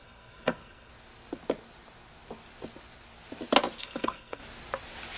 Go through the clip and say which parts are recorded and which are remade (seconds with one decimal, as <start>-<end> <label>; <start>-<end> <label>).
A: 0.0-0.9 remade; 0.9-3.8 recorded; 3.8-4.4 remade; 4.4-5.2 recorded